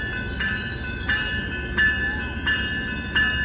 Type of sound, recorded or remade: recorded